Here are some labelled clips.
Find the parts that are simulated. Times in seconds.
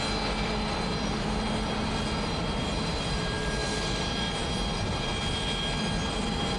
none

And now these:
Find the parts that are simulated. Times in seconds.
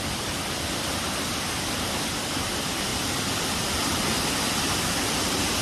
2.9-4.0 (vocoder, BigVGAN v2)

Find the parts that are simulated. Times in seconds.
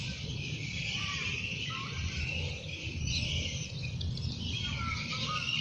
0.0-2.2 (vocoder, BigVGAN v2)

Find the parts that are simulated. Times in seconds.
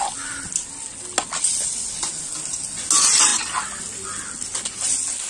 none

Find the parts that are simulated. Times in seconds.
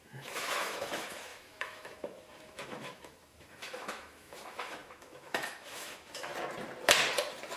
0.0-6.3 (autoencoder, DAC-VAE)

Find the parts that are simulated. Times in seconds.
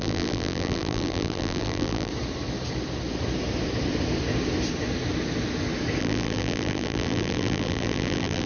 0.0-2.1 (vocoder, BigVGAN v2); 6.0-8.5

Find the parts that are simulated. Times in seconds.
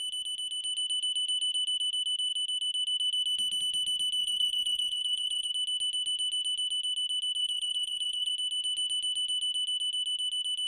4.2-5.5 (vocoder, BigVGAN v2); 7.4-8.3